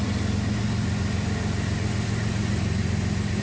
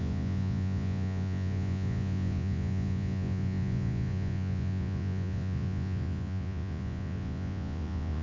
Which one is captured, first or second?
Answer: first